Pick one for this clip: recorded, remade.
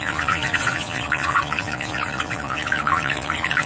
remade